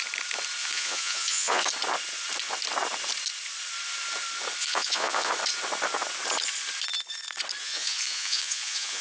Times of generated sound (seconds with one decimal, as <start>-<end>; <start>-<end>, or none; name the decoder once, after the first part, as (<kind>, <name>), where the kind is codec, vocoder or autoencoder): 0.6-1.7 (vocoder, Vocos); 4.6-5.3; 7.6-9.0